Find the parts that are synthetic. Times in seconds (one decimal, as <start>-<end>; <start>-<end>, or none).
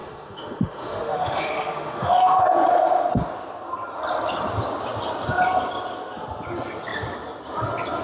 0.0-2.4